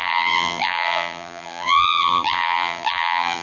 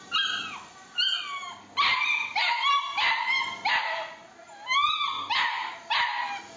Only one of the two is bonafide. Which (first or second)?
second